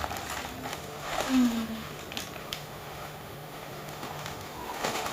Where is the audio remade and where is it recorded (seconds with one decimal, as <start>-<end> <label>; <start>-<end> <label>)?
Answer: 0.0-0.7 recorded; 0.7-2.0 remade; 2.0-2.4 recorded; 2.4-5.1 remade